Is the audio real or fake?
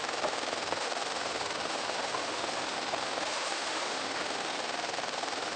fake